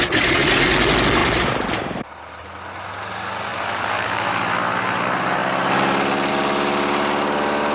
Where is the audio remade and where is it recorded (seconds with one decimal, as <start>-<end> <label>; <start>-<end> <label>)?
0.0-1.2 recorded; 1.2-2.0 remade; 2.0-3.5 recorded; 3.5-5.0 remade; 5.0-7.7 recorded